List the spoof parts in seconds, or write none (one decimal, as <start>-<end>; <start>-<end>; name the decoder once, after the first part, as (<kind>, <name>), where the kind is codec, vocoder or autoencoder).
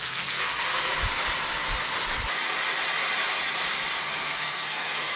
0.0-0.9 (codec, SNAC); 4.0-5.2